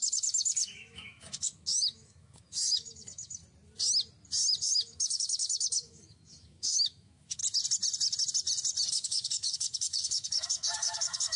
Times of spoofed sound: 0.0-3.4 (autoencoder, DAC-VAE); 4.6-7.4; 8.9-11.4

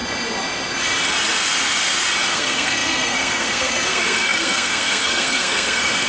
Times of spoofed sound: 2.3-6.1 (codec, SNAC)

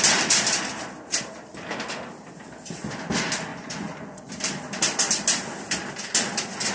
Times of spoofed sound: 3.5-4.3 (vocoder, Vocos)

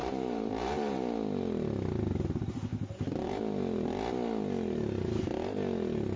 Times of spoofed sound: 0.0-1.0 (vocoder, BigVGAN v2); 2.7-3.4

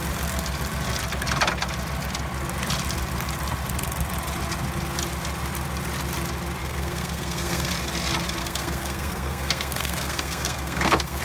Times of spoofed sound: 6.6-7.7 (codec, SNAC); 8.4-11.2

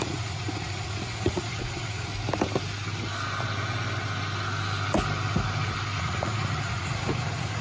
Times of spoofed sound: 0.0-2.1 (vocoder, Vocos); 6.0-7.6